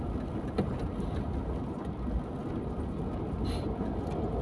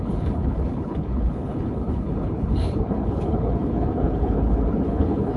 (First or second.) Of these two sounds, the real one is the first